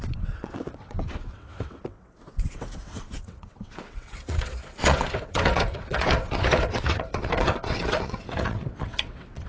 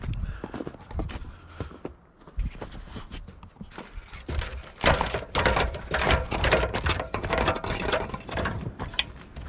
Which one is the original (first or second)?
second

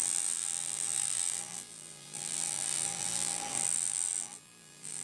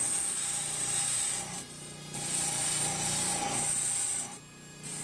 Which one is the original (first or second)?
second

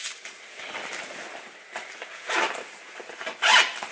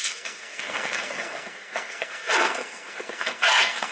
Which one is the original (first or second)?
first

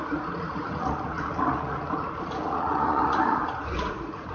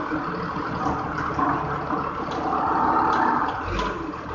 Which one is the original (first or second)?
second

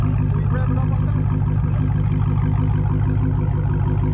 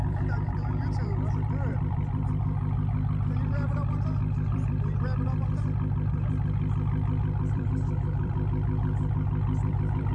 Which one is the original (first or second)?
first